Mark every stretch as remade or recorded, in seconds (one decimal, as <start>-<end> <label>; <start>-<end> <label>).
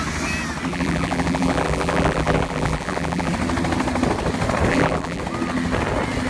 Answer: 0.0-0.7 recorded; 0.7-3.3 remade; 3.3-4.7 recorded; 4.7-5.2 remade; 5.2-6.3 recorded